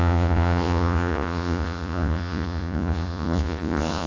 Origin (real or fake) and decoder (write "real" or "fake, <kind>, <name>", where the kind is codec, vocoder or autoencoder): fake, vocoder, Vocos